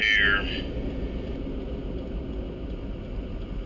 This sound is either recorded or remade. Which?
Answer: recorded